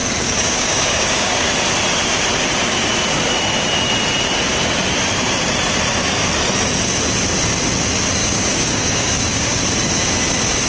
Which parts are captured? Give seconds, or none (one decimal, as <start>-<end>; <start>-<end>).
1.5-8.2; 9.6-10.7